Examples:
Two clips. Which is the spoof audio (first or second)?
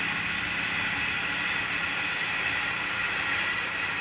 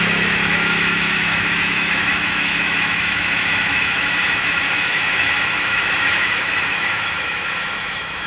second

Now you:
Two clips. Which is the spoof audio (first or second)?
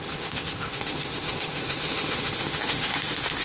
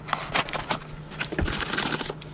first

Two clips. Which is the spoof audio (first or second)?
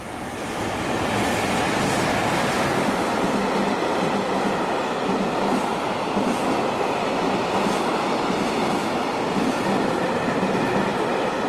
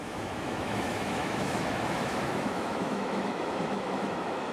second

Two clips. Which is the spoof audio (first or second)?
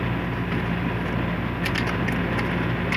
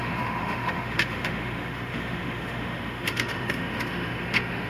second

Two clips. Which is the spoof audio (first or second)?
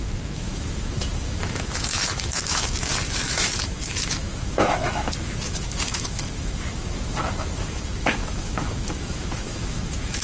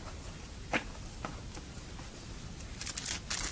first